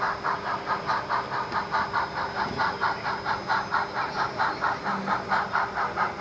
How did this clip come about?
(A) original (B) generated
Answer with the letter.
A